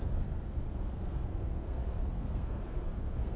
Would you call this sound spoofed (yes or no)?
yes